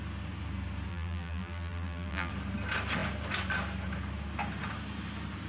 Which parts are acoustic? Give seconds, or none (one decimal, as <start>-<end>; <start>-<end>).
0.0-0.9; 2.3-5.5